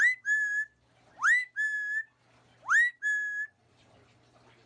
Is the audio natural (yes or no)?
yes